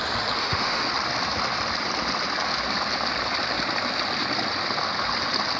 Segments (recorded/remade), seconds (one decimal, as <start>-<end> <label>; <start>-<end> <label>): 0.0-0.4 recorded; 0.4-0.9 remade; 0.9-5.6 recorded